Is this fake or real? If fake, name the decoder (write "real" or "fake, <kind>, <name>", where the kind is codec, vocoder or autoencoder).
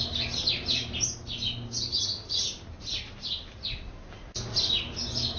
real